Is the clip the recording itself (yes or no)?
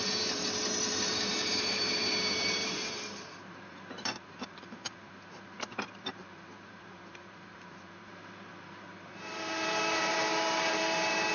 no